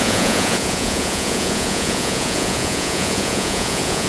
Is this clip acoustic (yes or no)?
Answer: no